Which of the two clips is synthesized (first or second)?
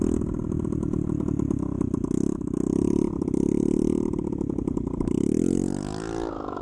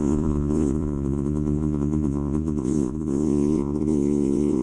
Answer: second